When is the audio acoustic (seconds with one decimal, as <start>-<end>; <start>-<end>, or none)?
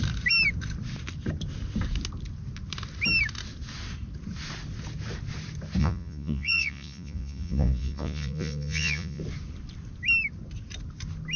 0.0-5.8; 9.2-11.4